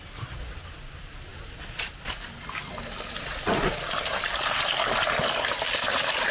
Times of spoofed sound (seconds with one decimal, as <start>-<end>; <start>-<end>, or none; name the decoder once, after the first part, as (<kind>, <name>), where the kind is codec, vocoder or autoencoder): none